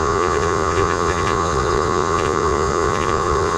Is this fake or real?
fake